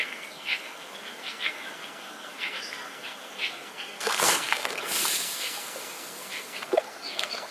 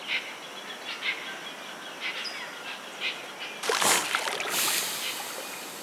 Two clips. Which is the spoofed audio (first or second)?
first